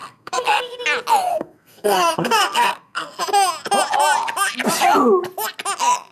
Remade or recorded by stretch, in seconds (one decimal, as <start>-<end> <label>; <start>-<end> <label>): 0.0-0.8 remade; 0.8-1.3 recorded; 1.3-3.2 remade; 3.2-6.1 recorded